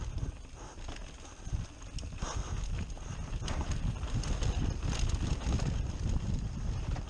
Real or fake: real